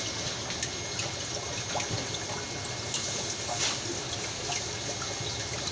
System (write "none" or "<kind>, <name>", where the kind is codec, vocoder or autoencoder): none